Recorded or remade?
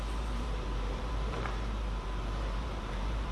remade